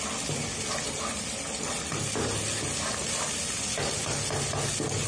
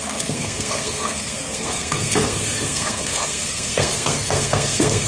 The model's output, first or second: second